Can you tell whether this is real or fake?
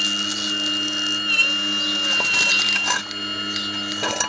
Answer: real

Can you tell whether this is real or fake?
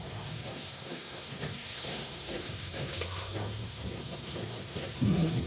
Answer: fake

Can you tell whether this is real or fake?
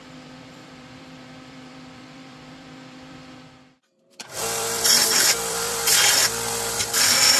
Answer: fake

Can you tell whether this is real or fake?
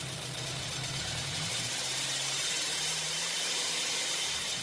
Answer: fake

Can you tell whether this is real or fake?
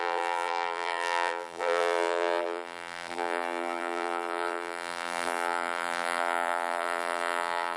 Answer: fake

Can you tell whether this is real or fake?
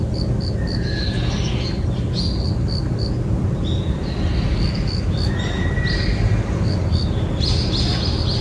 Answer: real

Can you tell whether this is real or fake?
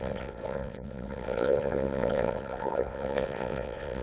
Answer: fake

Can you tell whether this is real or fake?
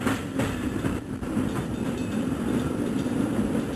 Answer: fake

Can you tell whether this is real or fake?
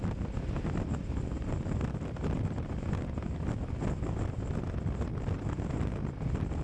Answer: real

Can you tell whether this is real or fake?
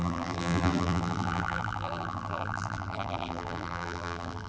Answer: fake